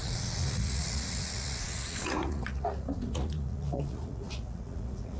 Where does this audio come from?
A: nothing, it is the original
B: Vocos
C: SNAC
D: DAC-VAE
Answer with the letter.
B